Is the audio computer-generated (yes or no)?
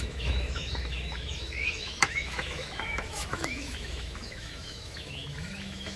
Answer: yes